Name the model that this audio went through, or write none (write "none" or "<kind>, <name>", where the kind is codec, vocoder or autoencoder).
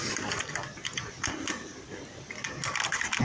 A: none